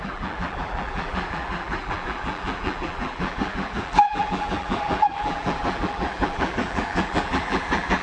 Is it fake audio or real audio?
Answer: fake